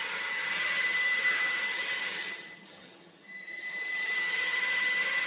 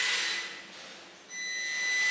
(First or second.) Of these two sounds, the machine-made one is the first